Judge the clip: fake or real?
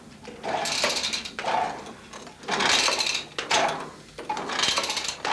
real